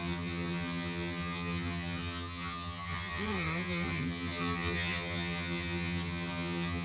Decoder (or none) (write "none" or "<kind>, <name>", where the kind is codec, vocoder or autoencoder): vocoder, HiFi-GAN